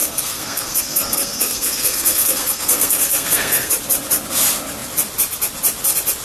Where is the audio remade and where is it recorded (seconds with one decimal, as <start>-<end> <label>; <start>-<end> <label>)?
0.0-3.7 remade; 3.7-6.2 recorded

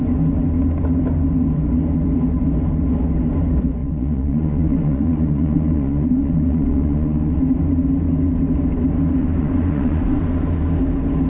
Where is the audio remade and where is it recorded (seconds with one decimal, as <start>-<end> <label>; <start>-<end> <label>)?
0.0-3.8 recorded; 3.8-7.4 remade; 7.4-9.2 recorded; 9.2-10.2 remade; 10.2-11.3 recorded

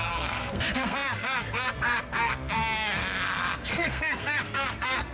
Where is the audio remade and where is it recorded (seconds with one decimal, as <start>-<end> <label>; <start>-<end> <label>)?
0.0-5.1 remade

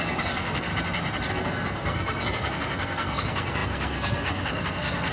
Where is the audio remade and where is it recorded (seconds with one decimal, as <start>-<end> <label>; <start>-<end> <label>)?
0.0-0.7 remade; 0.7-1.3 recorded; 1.3-5.1 remade

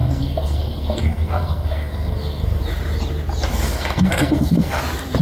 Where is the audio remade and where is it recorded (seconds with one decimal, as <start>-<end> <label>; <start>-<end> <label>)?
0.0-2.6 remade; 2.6-3.5 recorded; 3.5-4.8 remade; 4.8-5.2 recorded

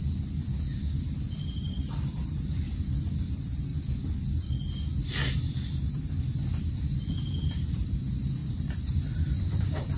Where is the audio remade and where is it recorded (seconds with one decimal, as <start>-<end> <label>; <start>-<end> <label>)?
0.0-0.9 recorded; 0.9-3.7 remade; 3.7-6.6 recorded; 6.6-10.0 remade

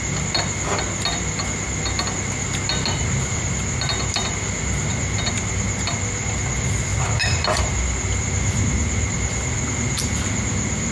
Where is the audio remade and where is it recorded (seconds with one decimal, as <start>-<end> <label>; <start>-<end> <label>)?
0.0-10.9 recorded

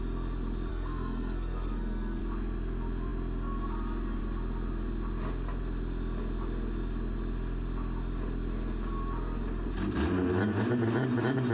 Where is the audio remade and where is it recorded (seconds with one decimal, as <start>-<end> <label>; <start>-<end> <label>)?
0.0-0.7 recorded; 0.7-2.2 remade; 2.2-11.5 recorded